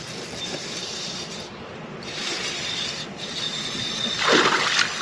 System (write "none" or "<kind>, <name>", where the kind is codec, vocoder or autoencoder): none